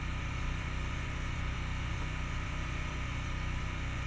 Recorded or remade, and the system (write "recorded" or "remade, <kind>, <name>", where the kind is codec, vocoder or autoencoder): remade, vocoder, Vocos